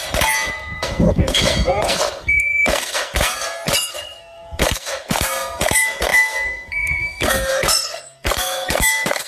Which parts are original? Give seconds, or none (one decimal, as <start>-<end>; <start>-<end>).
none